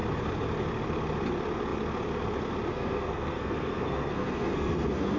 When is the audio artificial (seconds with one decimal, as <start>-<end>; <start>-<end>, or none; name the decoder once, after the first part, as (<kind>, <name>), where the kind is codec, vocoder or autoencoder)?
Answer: 2.7-5.2 (codec, SNAC)